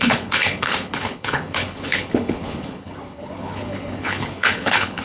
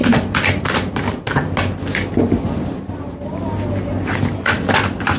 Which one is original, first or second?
second